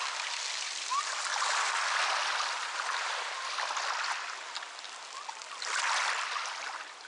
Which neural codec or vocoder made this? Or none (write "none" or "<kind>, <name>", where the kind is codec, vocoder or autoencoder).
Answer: none